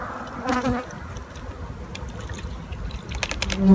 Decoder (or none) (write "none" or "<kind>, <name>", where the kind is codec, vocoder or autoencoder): none